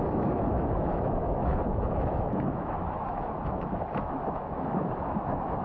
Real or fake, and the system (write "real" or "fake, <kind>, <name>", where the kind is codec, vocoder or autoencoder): fake, autoencoder, DAC-VAE